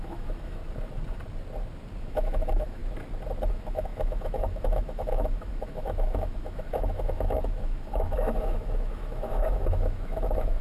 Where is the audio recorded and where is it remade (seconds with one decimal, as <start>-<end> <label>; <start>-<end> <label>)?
0.0-0.6 remade; 0.6-2.0 recorded; 2.0-2.8 remade; 2.8-3.5 recorded; 3.5-10.6 remade